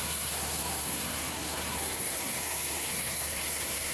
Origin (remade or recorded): remade